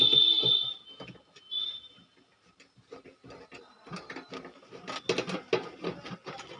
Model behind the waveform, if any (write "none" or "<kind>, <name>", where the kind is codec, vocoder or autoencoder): none